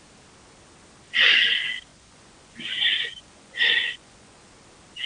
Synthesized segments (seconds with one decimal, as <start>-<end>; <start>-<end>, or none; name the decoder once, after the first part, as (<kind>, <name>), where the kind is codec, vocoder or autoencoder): 1.9-4.4 (vocoder, Vocos)